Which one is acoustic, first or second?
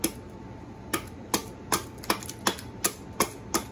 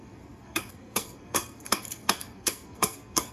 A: first